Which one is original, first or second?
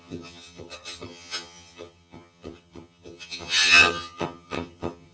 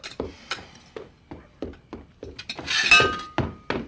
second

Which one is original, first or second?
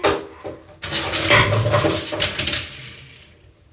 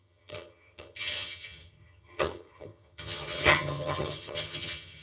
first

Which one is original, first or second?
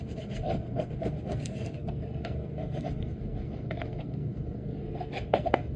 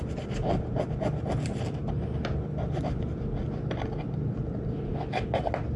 second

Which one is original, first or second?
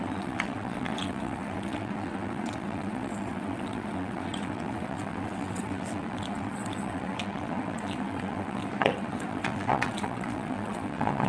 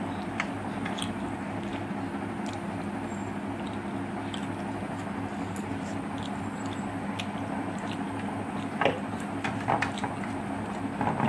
second